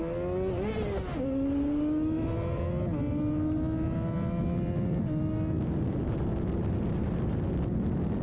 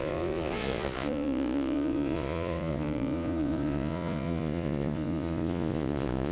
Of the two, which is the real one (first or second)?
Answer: first